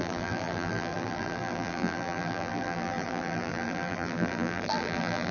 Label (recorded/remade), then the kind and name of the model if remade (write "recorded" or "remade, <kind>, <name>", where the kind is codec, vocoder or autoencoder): remade, vocoder, BigVGAN v2